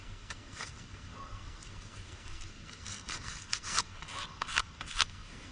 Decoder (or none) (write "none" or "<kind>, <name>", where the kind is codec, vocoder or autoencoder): codec, SNAC